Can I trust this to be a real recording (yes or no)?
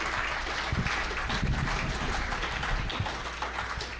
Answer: yes